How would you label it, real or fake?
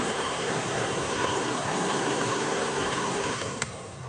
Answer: fake